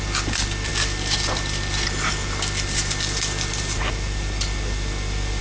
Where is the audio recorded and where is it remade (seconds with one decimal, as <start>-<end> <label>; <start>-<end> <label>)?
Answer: 0.0-5.4 recorded